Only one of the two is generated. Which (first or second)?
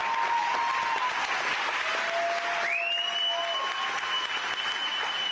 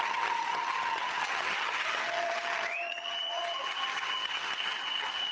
second